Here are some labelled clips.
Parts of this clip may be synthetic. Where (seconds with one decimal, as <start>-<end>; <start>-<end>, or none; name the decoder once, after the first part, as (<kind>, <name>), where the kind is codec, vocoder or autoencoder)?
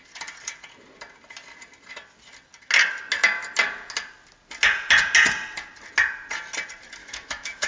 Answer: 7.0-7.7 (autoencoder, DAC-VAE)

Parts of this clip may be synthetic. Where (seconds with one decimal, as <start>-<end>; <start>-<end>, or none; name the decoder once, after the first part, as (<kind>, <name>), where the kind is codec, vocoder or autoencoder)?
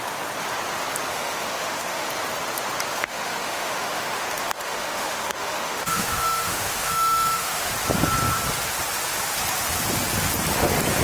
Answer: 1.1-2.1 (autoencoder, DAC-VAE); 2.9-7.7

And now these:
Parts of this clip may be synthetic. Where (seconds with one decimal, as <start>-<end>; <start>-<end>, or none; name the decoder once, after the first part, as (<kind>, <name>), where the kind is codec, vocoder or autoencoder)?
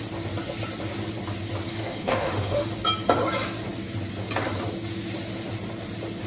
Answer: 1.7-2.7 (autoencoder, DAC-VAE)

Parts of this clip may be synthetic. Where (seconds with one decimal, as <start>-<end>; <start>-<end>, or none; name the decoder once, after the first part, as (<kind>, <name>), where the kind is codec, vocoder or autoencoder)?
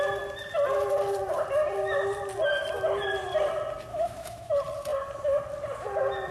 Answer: 3.9-4.5 (autoencoder, DAC-VAE)